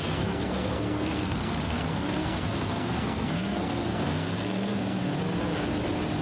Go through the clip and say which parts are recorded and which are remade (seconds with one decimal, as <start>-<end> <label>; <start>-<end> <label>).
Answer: 0.0-5.0 remade; 5.0-6.2 recorded